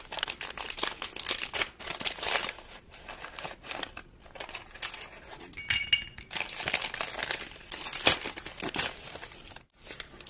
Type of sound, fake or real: real